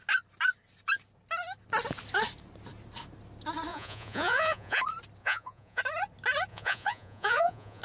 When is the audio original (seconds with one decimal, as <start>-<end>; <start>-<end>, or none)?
0.0-3.7; 4.8-5.2; 5.8-6.5